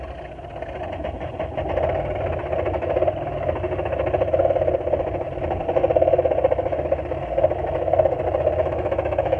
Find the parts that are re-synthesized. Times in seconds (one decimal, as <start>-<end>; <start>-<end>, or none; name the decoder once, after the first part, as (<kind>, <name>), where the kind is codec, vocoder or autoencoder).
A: 8.6-9.4 (autoencoder, DAC-VAE)